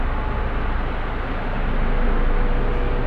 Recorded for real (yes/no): yes